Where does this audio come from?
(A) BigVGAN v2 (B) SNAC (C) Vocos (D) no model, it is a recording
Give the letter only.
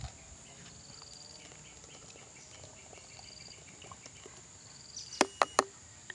D